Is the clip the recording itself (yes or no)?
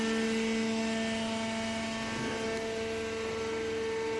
yes